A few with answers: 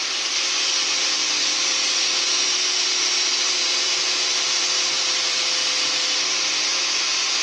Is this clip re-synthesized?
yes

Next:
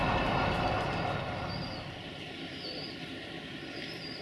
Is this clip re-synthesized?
no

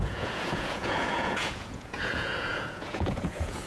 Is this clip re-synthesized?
yes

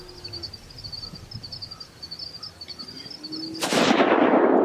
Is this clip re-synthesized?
no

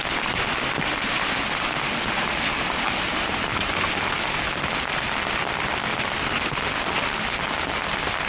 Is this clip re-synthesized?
no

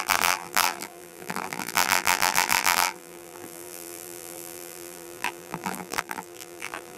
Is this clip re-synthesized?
yes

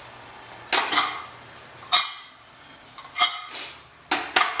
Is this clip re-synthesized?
no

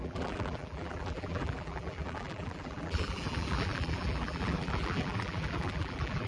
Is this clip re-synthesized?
yes